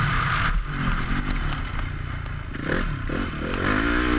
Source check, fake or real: real